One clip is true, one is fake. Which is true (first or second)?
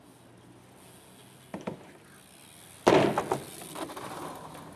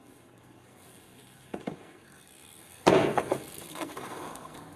first